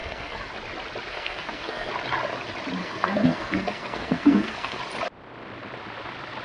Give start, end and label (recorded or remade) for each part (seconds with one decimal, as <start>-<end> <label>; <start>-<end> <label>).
0.0-0.5 remade; 0.5-1.1 recorded; 1.1-1.9 remade; 1.9-2.8 recorded; 2.8-4.8 remade; 4.8-6.4 recorded